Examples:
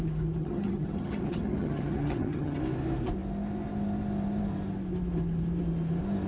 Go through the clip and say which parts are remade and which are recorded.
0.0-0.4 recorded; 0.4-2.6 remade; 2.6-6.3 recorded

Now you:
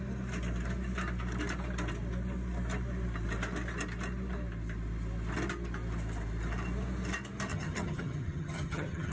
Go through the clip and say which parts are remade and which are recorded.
0.0-7.5 recorded; 7.5-9.1 remade

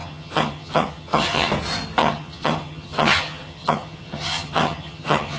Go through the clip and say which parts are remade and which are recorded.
0.0-1.5 remade; 1.5-2.0 recorded; 2.0-5.4 remade

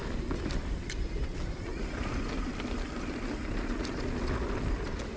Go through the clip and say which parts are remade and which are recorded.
0.0-5.2 recorded

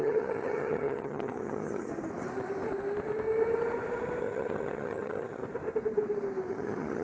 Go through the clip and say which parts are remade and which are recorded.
0.0-1.9 remade; 1.9-4.2 recorded; 4.2-5.4 remade; 5.4-6.5 recorded; 6.5-7.0 remade

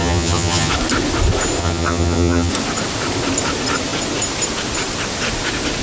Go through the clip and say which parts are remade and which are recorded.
0.0-0.7 remade; 0.7-1.6 recorded; 1.6-2.5 remade; 2.5-5.8 recorded

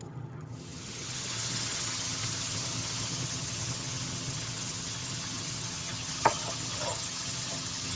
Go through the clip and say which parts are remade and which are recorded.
0.0-8.0 remade

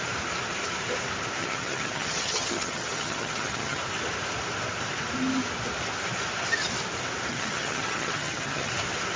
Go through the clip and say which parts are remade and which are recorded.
0.0-1.4 recorded; 1.4-3.8 remade; 3.8-7.3 recorded; 7.3-8.7 remade; 8.7-9.2 recorded